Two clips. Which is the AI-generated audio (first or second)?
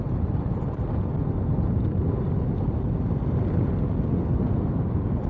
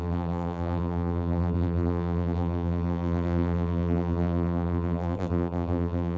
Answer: second